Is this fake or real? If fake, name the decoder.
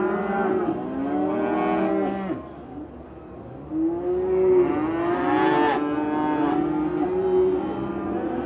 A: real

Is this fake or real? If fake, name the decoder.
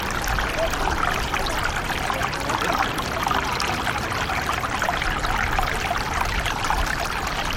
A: real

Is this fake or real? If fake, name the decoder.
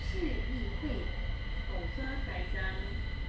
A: real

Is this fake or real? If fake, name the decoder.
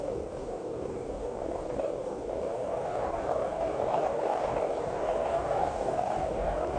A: fake, codec, DAC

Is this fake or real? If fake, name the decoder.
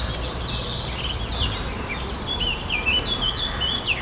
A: real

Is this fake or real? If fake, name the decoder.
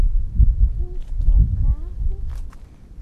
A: real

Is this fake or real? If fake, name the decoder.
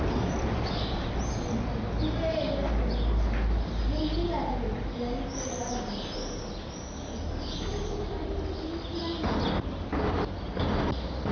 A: real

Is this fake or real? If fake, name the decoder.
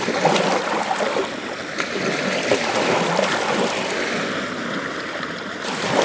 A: real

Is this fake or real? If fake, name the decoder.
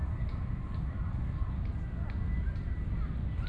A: real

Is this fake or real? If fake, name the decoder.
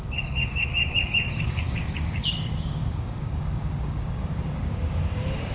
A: fake, codec, DAC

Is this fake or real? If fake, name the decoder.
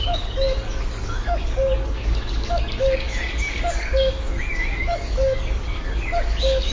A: fake, codec, DAC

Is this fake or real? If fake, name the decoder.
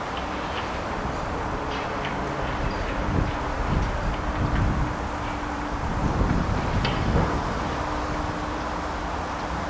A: real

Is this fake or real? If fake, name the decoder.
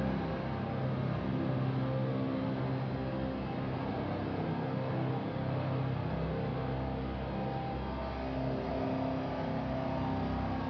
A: real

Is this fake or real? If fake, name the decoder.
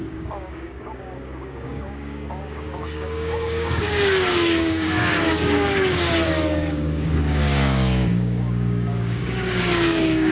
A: fake, codec, DAC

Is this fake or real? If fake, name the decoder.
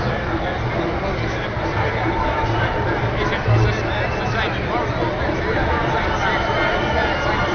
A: real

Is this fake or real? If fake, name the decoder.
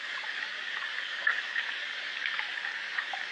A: fake, codec, DAC